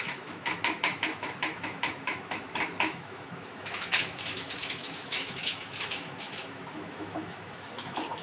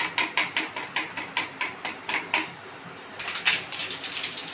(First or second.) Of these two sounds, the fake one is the first